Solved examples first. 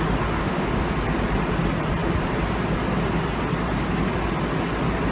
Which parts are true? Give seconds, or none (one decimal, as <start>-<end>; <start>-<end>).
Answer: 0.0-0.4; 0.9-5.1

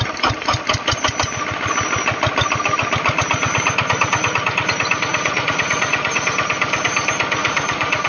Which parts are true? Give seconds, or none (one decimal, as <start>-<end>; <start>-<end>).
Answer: 0.0-5.1; 6.2-7.4

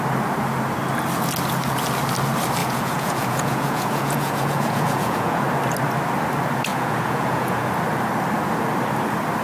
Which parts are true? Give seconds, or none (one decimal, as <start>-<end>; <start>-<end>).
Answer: 0.0-2.6; 5.4-6.7; 7.7-9.4

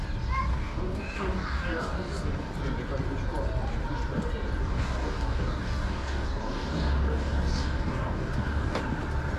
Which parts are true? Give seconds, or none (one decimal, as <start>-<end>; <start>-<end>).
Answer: 0.0-0.5; 2.5-4.6; 8.8-9.4

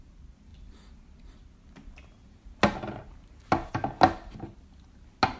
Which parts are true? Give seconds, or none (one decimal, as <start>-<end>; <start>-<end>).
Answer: 0.0-5.4